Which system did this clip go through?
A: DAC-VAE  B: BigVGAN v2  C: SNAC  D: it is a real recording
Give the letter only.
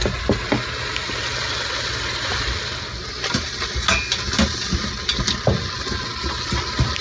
D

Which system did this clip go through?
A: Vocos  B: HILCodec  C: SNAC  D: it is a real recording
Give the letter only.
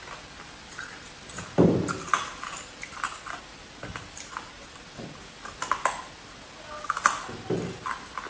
D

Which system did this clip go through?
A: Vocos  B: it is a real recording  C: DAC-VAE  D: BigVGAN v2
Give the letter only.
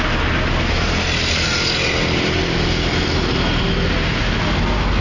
B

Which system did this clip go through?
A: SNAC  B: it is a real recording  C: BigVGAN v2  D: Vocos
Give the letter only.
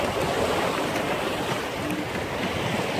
B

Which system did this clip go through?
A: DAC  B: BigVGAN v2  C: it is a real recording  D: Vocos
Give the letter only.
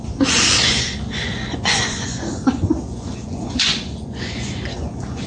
D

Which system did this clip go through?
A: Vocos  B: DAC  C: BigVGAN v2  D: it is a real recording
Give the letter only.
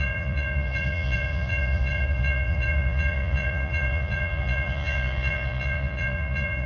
A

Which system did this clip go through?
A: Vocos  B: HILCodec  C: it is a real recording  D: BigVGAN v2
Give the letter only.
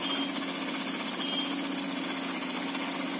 C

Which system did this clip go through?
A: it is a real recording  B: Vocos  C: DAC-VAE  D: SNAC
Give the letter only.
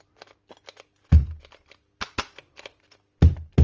A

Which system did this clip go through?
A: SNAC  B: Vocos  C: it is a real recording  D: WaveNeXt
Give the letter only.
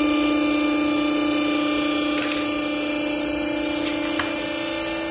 C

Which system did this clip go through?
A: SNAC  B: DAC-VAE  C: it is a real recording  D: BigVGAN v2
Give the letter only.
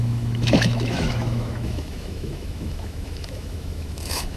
B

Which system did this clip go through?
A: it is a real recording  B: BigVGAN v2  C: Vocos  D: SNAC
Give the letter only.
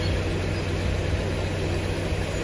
A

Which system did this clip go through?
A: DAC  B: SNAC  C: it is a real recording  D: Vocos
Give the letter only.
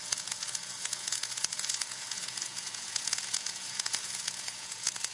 D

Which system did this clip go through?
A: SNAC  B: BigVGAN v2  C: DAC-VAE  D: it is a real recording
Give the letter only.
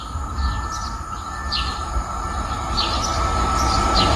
D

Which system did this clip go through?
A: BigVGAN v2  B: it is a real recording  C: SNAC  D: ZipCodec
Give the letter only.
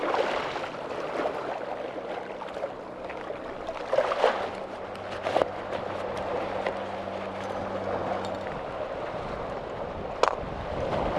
B